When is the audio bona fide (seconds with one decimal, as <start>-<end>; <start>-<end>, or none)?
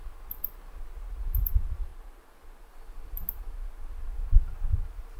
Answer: 1.5-4.1